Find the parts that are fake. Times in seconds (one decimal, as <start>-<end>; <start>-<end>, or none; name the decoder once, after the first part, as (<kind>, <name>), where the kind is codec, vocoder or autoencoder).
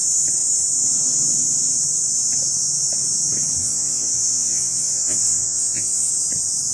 3.6-6.1 (vocoder, Vocos)